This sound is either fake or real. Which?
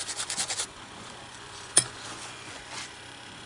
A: fake